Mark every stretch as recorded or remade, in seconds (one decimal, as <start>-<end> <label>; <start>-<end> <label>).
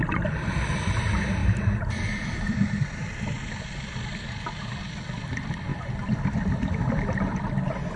0.0-1.4 recorded; 1.4-3.2 remade; 3.2-5.7 recorded; 5.7-6.3 remade; 6.3-8.0 recorded